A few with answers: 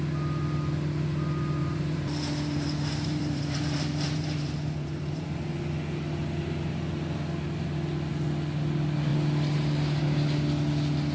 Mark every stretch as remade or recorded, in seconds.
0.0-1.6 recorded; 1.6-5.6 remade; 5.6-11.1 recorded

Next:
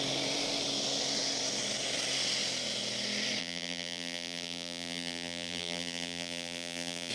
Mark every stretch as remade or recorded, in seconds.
0.0-3.4 recorded; 3.4-7.1 remade